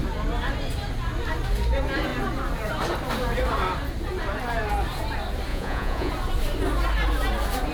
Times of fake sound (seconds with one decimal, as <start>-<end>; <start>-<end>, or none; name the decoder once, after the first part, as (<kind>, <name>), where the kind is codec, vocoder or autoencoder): 5.5-6.1 (vocoder, Vocos)